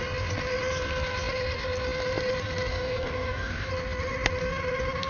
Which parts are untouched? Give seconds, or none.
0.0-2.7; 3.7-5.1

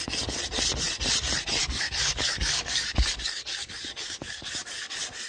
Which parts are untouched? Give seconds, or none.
0.0-1.6; 4.8-5.3

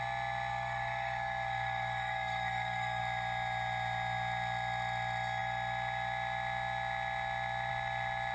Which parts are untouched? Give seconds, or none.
0.0-0.5; 3.0-8.3

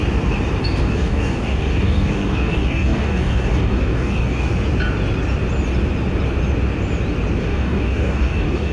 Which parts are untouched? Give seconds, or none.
0.0-0.6; 4.5-7.4

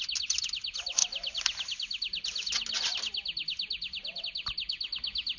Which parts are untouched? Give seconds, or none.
0.0-5.4

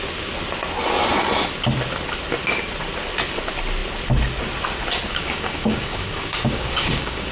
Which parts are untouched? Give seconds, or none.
0.0-5.1

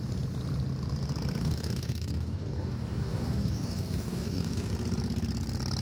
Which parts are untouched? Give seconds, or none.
0.0-1.4; 4.7-5.8